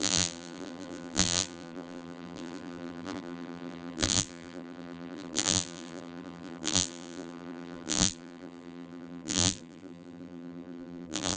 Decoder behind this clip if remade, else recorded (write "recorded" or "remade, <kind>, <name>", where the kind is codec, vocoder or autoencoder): remade, vocoder, BigVGAN v2